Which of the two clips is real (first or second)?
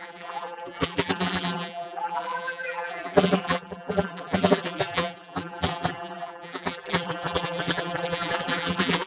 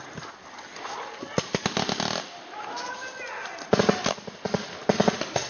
second